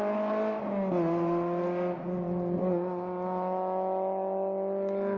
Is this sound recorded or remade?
recorded